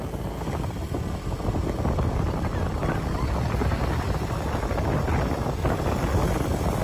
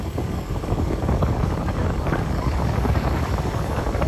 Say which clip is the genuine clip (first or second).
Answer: first